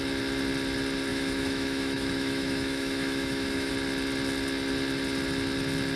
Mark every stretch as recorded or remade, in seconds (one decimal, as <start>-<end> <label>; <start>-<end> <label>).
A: 0.0-1.1 recorded; 1.1-3.7 remade; 3.7-6.0 recorded